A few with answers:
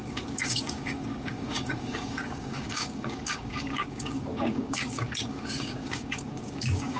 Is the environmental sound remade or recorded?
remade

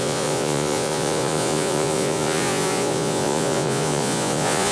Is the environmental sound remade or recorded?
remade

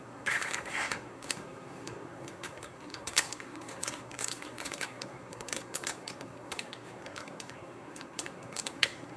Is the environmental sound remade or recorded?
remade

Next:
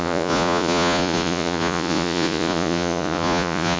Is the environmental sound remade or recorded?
remade